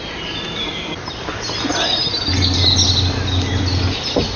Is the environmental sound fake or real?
real